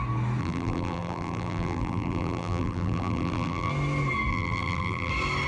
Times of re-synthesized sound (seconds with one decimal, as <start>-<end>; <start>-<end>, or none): 0.4-3.7; 4.3-5.1

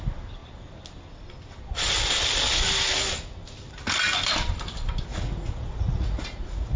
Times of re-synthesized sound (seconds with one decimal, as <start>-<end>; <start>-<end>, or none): 5.1-6.8

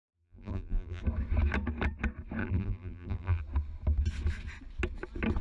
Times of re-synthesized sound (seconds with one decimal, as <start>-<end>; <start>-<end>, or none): 0.0-1.0; 2.4-3.4

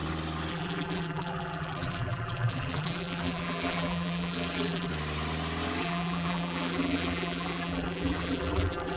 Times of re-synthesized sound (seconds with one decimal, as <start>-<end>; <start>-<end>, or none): 0.5-4.9; 5.8-9.0

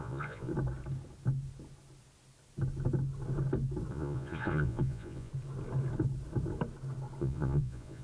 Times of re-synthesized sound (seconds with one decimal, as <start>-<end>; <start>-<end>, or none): 0.0-0.5; 3.9-5.3; 7.2-8.0

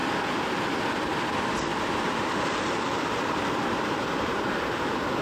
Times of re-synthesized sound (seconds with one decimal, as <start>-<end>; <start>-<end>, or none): 1.7-4.8

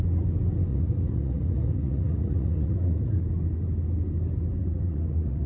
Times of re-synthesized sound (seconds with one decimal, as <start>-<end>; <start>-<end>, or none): 0.7-3.2; 4.6-5.5

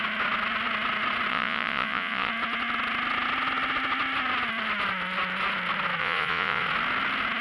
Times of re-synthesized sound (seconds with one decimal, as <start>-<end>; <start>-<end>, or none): 1.3-2.3; 6.0-6.6